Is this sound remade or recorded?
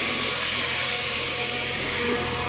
remade